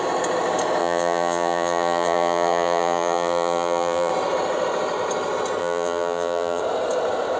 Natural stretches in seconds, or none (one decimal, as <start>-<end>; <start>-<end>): 0.0-0.8; 4.1-5.6; 6.6-7.4